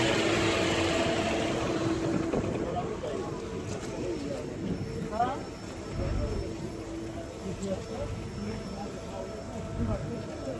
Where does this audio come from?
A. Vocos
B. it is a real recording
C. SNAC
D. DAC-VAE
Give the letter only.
B